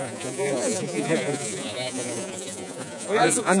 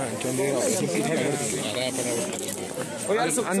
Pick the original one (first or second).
second